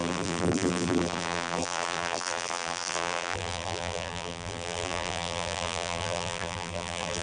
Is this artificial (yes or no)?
yes